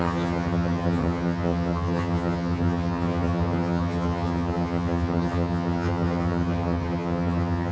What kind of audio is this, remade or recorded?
remade